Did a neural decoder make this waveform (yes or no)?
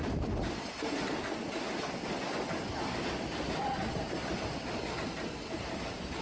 no